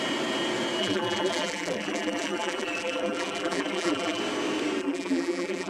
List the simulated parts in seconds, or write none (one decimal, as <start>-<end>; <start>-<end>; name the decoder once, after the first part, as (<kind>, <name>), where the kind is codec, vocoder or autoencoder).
0.8-4.2 (vocoder, BigVGAN v2); 4.8-5.7